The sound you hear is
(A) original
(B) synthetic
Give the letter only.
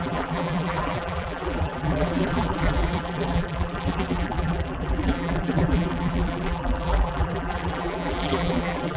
B